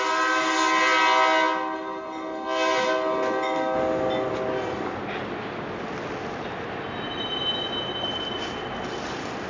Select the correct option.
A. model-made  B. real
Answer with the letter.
B